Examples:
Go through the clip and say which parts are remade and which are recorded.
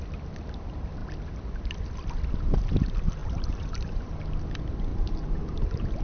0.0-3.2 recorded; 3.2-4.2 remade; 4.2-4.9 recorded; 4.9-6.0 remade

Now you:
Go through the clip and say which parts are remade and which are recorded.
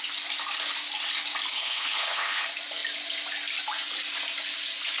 0.0-1.5 recorded; 1.5-2.4 remade; 2.4-5.0 recorded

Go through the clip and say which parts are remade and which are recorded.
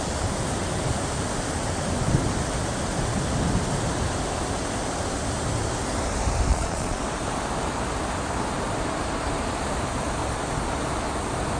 0.0-6.5 recorded; 6.5-7.0 remade; 7.0-11.6 recorded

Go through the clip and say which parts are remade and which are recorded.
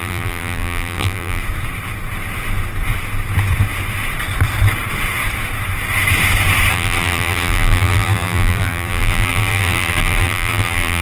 0.0-1.4 remade; 1.4-6.7 recorded; 6.7-11.0 remade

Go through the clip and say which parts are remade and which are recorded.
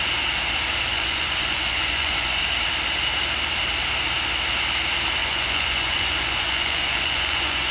0.0-0.9 recorded; 0.9-2.4 remade; 2.4-5.2 recorded; 5.2-7.7 remade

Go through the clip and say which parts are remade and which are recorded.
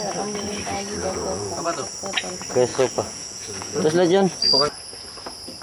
0.0-1.0 recorded; 1.0-1.6 remade; 1.6-2.7 recorded; 2.7-3.8 remade; 3.8-5.6 recorded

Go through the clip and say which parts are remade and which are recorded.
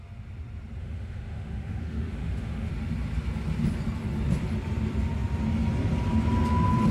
0.0-0.8 recorded; 0.8-2.7 remade; 2.7-6.9 recorded